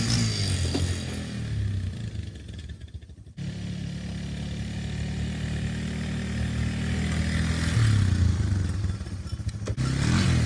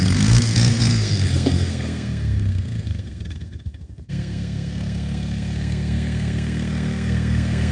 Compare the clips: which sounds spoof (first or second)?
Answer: second